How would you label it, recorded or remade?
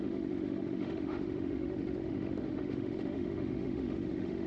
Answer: remade